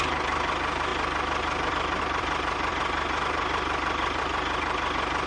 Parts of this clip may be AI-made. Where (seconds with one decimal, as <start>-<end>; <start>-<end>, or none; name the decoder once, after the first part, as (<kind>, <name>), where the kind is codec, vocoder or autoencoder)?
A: none